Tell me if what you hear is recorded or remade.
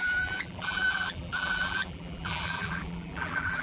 remade